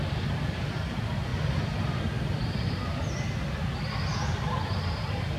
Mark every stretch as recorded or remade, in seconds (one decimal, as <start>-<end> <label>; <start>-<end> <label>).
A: 0.0-5.4 recorded